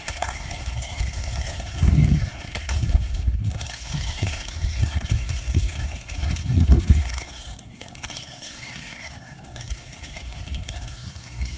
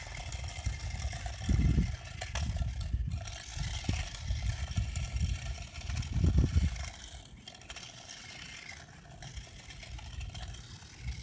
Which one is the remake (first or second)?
first